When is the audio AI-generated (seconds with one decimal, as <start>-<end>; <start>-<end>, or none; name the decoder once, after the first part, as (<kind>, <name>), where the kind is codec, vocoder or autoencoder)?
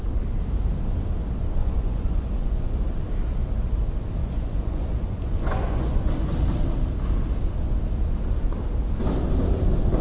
1.6-2.8 (vocoder, Vocos); 4.2-6.1